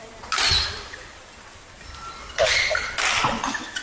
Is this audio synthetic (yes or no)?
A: no